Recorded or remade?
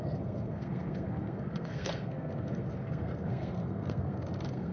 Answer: remade